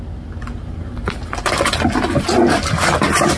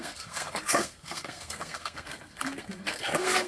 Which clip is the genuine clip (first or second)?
first